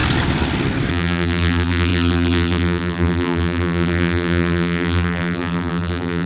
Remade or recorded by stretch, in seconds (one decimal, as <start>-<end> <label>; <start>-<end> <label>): 0.0-0.9 recorded; 0.9-6.3 remade